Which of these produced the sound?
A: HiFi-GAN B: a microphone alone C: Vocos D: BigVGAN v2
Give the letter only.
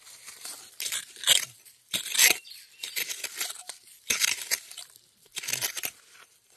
B